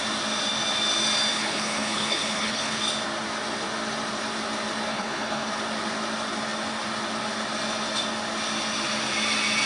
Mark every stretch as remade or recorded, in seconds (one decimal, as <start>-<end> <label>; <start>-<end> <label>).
0.0-1.3 recorded; 1.3-2.8 remade; 2.8-4.9 recorded; 4.9-5.5 remade; 5.5-9.7 recorded